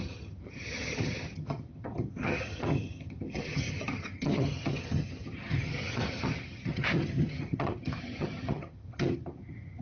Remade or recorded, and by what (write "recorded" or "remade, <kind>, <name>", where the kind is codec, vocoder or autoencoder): remade, vocoder, HiFi-GAN